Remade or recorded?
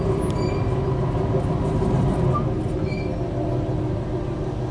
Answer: recorded